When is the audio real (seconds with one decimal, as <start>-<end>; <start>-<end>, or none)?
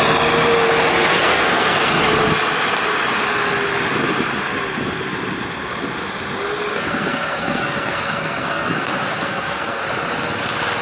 0.0-1.1; 1.9-6.7; 9.8-10.8